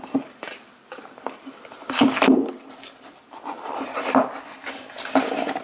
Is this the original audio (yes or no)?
no